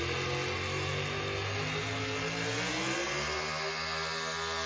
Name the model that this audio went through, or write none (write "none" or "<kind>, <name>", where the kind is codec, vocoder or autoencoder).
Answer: none